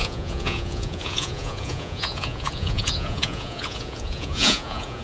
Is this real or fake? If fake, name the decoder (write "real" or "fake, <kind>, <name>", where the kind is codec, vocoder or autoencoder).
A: fake, vocoder, Vocos